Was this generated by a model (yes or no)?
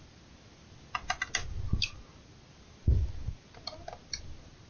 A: no